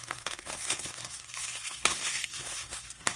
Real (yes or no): no